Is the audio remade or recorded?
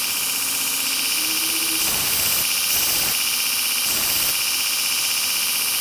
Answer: recorded